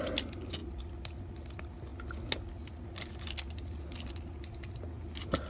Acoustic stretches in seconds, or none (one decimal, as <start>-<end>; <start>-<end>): 0.0-5.5

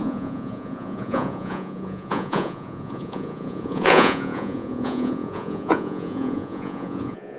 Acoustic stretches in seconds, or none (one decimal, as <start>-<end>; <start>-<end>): none

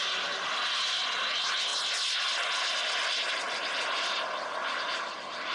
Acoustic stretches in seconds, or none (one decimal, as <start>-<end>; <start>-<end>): 0.0-5.5

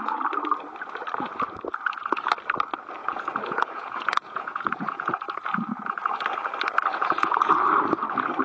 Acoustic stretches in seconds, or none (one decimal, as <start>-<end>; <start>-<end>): 0.0-3.0; 5.1-6.9; 7.5-8.4

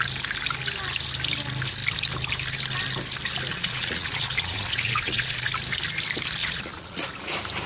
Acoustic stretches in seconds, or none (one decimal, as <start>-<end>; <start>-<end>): 0.0-3.5; 5.5-6.4; 7.1-7.7

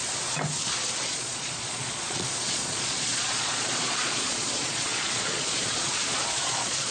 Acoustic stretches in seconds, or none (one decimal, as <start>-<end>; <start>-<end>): 0.0-1.1

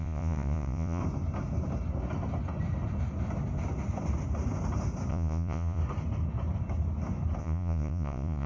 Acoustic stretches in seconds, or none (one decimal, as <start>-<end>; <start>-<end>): 1.0-5.1; 5.8-7.4